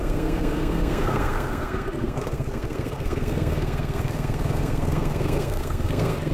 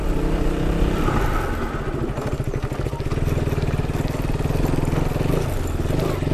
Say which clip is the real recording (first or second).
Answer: second